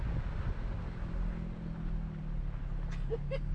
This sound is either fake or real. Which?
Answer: real